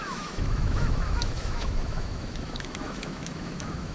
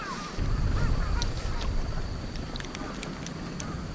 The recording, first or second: second